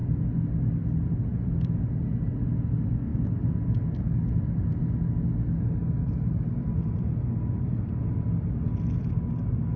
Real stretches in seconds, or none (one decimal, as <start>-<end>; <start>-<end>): 0.0-5.8; 8.1-9.8

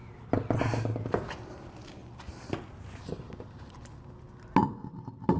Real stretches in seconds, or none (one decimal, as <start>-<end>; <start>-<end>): 0.0-5.4

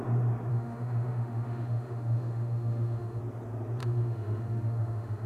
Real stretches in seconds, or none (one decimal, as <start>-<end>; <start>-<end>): 0.0-0.5; 3.2-3.8